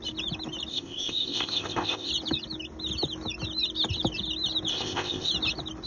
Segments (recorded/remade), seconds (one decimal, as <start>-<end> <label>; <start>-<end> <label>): 0.0-0.7 recorded; 0.7-2.1 remade; 2.1-4.7 recorded; 4.7-5.3 remade; 5.3-5.9 recorded